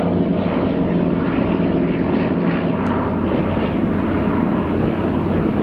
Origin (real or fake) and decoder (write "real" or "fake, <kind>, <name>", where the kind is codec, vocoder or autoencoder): real